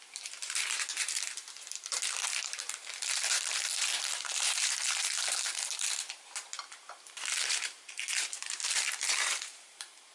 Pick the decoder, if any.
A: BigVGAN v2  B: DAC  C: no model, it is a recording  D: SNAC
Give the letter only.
A